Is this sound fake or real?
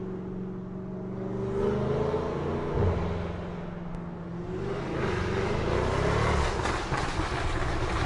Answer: real